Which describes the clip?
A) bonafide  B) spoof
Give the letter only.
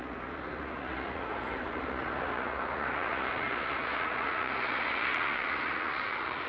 B